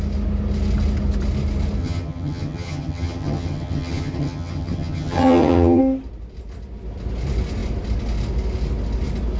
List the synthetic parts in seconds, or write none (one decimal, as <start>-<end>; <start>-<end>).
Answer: 1.8-5.8